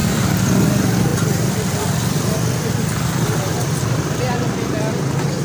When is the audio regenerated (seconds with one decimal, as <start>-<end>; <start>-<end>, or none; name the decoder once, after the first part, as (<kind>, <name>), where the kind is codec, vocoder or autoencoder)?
1.1-4.3 (vocoder, BigVGAN v2)